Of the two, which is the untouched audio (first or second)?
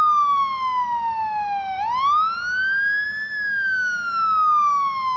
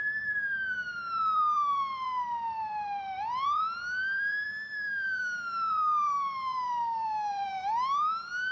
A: first